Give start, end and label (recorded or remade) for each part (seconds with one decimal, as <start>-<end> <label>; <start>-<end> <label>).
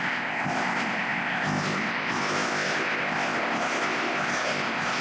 0.0-5.0 remade